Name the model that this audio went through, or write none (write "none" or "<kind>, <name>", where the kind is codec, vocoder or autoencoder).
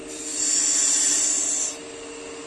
none